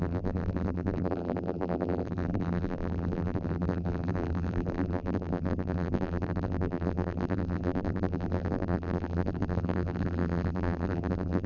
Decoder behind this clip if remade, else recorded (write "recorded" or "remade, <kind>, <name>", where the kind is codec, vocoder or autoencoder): remade, vocoder, BigVGAN v2